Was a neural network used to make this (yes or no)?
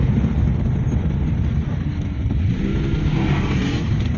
no